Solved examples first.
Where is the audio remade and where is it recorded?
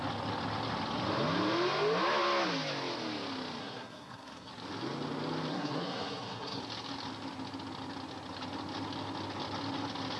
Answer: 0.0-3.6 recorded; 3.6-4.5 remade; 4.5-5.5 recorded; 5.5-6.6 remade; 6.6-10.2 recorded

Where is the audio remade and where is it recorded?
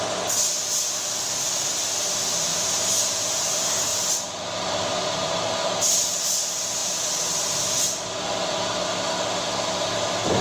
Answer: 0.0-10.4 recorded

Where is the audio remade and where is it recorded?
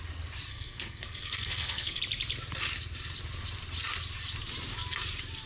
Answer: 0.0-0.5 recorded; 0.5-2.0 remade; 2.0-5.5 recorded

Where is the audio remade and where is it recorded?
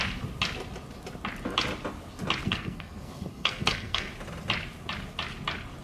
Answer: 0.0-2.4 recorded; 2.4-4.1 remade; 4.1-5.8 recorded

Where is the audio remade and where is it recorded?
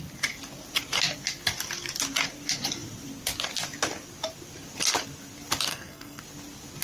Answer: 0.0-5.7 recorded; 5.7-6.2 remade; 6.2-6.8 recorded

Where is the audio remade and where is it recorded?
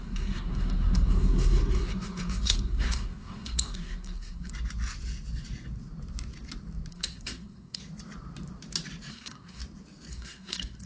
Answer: 0.0-4.5 remade; 4.5-6.9 recorded; 6.9-7.8 remade; 7.8-9.1 recorded; 9.1-9.6 remade; 9.6-10.1 recorded; 10.1-10.9 remade